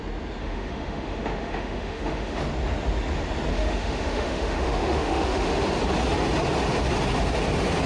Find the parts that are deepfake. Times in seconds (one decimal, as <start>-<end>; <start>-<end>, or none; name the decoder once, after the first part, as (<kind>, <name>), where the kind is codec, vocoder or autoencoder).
0.4-2.4 (autoencoder, DAC-VAE); 3.5-5.6